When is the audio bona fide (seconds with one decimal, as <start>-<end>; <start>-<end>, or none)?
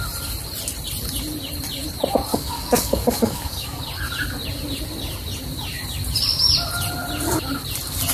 0.0-2.3; 3.8-8.1